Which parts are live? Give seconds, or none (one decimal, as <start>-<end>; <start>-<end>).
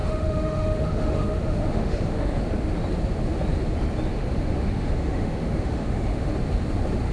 2.4-4.1; 6.3-7.1